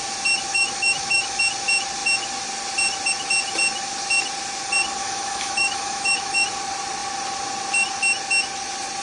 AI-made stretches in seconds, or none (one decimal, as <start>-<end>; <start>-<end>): 0.5-1.4; 5.0-6.5